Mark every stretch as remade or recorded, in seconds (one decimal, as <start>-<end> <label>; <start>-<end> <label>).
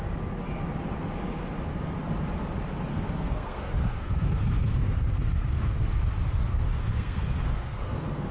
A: 0.0-2.9 recorded; 2.9-6.0 remade; 6.0-6.5 recorded; 6.5-8.3 remade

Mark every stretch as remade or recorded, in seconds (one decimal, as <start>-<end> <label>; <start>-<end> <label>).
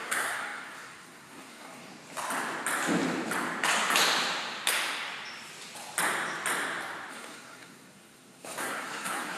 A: 0.0-1.9 remade; 1.9-7.1 recorded; 7.1-9.4 remade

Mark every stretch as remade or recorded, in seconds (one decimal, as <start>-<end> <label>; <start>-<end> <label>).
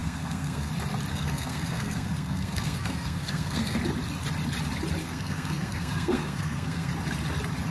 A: 0.0-0.7 remade; 0.7-1.1 recorded; 1.1-3.8 remade; 3.8-5.0 recorded; 5.0-6.9 remade; 6.9-7.7 recorded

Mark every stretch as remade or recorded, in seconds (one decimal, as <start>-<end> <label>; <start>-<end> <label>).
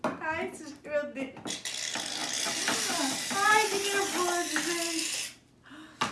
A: 0.0-6.1 recorded